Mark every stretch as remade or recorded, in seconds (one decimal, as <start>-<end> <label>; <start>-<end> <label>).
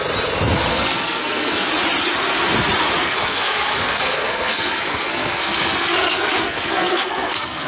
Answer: 0.0-0.7 recorded; 0.7-1.7 remade; 1.7-3.0 recorded; 3.0-7.7 remade